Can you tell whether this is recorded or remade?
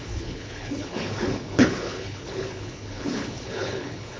remade